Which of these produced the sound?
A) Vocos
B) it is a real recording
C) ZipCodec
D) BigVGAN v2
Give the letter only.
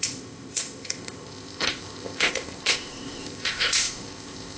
C